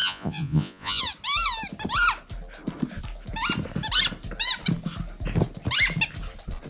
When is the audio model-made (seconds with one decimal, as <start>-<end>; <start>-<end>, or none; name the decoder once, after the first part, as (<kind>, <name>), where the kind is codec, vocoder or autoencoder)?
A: 0.0-1.0 (vocoder, Vocos)